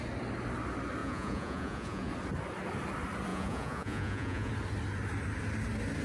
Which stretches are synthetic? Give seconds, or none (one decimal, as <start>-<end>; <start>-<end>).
1.0-2.1; 3.3-4.5